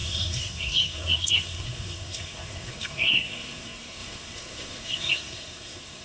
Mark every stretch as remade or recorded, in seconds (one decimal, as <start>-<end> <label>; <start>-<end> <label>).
0.0-6.0 remade